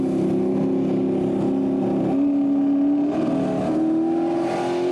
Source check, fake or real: real